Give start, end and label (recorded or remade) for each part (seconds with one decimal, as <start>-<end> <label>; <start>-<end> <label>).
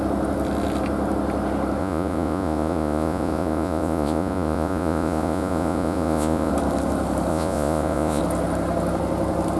0.0-1.8 recorded; 1.8-6.5 remade; 6.5-7.3 recorded; 7.3-8.2 remade; 8.2-9.6 recorded